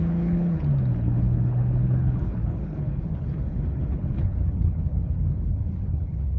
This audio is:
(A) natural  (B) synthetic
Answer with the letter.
B